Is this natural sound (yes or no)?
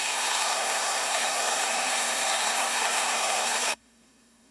no